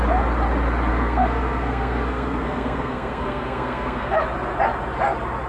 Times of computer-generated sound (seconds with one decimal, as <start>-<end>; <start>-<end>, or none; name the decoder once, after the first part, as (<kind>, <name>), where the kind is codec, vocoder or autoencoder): 0.9-4.2 (codec, SNAC)